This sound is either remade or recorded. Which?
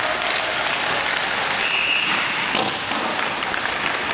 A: recorded